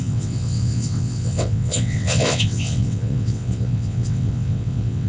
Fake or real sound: fake